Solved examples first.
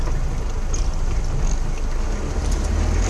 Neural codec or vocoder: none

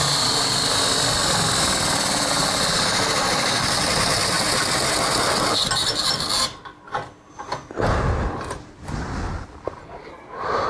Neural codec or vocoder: none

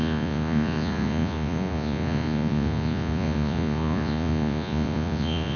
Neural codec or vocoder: vocoder, Vocos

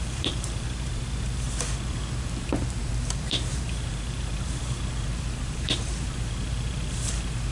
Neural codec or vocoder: vocoder, BigVGAN v2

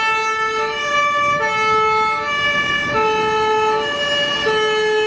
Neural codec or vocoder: none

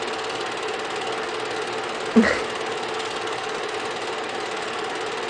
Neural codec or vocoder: none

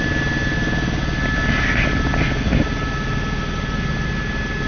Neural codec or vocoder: none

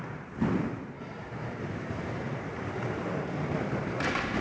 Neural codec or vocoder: vocoder, BigVGAN v2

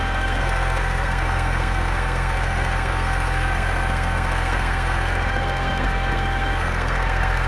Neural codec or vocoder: codec, SNAC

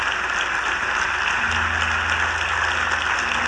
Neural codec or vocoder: none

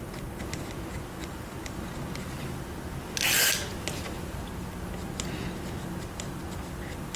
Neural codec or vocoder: none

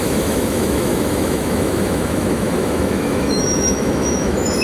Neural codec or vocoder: autoencoder, DAC-VAE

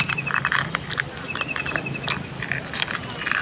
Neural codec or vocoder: none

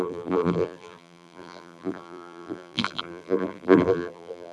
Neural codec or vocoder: vocoder, BigVGAN v2